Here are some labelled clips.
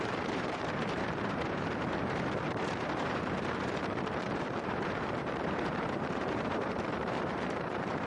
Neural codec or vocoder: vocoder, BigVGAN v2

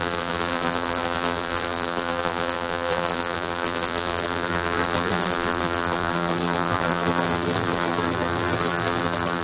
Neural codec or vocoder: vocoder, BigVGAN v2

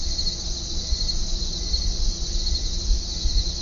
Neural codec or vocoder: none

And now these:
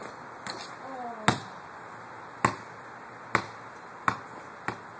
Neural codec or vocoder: none